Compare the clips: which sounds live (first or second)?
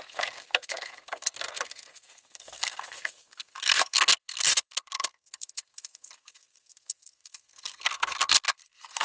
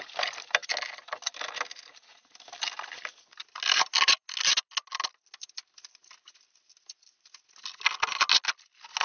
second